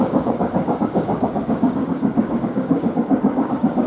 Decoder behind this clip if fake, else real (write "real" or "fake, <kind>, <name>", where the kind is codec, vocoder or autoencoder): fake, codec, DAC